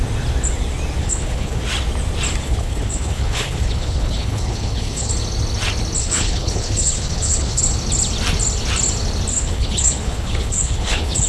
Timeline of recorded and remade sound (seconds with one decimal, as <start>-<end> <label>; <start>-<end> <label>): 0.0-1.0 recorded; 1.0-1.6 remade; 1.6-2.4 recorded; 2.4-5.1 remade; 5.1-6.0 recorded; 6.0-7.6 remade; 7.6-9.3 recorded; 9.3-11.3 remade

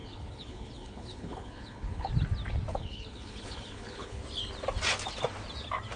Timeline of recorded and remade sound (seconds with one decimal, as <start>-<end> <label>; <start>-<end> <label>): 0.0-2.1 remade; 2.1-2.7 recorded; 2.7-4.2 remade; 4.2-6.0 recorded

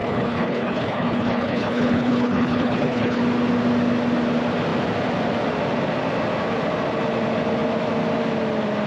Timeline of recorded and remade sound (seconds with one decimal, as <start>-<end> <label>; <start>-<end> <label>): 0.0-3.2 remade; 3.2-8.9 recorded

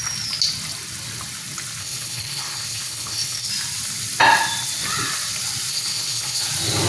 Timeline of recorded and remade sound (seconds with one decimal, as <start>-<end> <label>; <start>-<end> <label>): 0.0-1.8 recorded; 1.8-3.5 remade; 3.5-5.7 recorded; 5.7-6.5 remade; 6.5-6.9 recorded